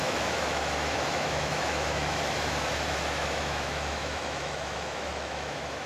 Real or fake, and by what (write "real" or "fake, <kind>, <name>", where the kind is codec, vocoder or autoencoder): fake, autoencoder, DAC-VAE